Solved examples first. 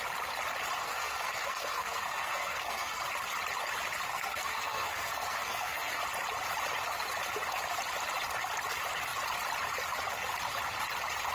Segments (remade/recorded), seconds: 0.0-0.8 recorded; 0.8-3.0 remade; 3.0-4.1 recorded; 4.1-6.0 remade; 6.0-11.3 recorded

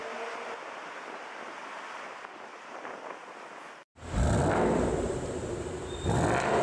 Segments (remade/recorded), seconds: 0.0-6.6 recorded